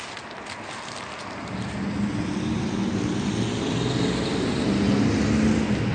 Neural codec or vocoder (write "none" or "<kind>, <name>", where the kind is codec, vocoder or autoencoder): none